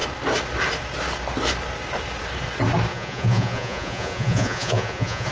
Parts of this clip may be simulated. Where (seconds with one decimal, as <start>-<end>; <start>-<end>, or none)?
2.9-5.3